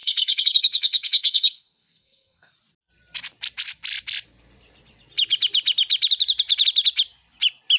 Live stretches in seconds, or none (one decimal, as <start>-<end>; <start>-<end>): 2.5-7.8